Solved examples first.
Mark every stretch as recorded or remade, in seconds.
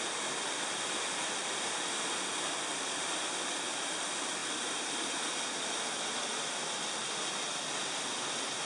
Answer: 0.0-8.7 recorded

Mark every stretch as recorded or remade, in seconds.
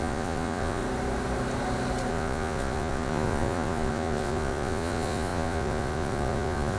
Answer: 0.0-0.8 remade; 0.8-2.1 recorded; 2.1-6.8 remade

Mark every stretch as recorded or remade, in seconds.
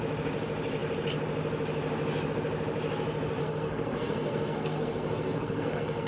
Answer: 0.0-3.4 recorded; 3.4-6.1 remade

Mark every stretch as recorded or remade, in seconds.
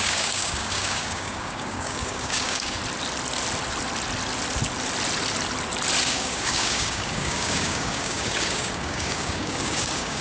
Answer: 0.0-2.8 remade; 2.8-6.0 recorded; 6.0-10.2 remade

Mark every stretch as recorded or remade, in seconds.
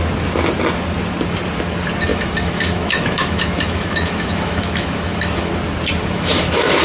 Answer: 0.0-2.1 recorded; 2.1-5.5 remade; 5.5-6.0 recorded; 6.0-6.8 remade